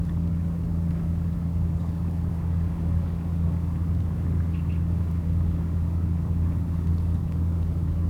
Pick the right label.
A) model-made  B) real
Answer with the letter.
A